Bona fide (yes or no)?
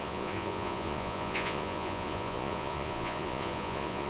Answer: no